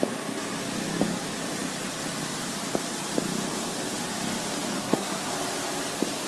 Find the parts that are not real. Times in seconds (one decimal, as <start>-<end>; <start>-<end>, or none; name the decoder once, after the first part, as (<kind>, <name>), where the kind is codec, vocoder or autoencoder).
4.8-5.3 (codec, SNAC)